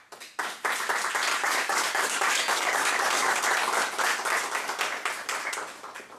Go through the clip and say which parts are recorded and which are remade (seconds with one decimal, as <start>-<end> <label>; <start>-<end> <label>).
0.0-1.3 recorded; 1.3-3.4 remade; 3.4-6.2 recorded